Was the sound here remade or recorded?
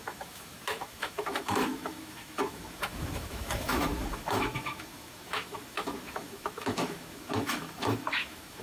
remade